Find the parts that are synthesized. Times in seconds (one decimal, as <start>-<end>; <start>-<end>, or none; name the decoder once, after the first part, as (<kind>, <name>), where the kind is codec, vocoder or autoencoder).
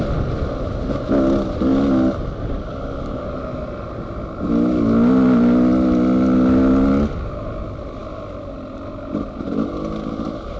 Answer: none